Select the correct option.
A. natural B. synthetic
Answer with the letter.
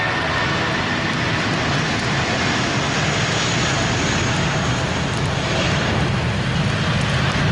A